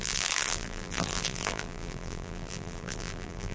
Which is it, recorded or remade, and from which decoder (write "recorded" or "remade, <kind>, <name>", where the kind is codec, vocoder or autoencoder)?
remade, vocoder, BigVGAN v2